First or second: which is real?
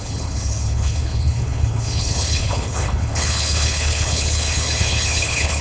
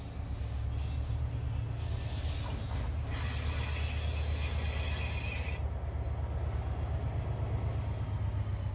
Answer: second